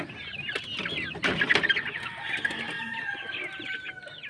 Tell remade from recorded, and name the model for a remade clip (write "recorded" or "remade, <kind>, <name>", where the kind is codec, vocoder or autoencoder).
recorded